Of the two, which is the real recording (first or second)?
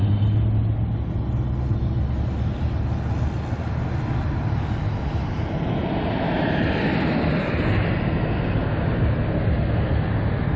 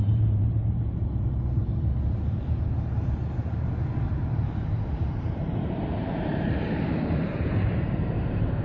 first